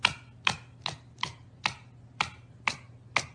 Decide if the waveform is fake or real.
real